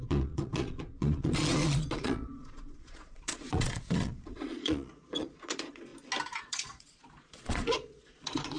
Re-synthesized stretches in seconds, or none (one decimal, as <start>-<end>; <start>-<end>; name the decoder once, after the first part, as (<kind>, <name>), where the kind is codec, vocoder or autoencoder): 0.0-5.9 (vocoder, Vocos); 6.4-8.6